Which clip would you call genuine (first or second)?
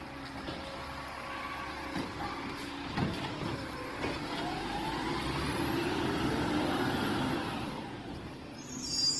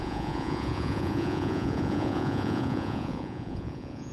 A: first